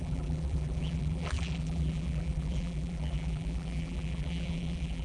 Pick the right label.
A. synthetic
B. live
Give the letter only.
A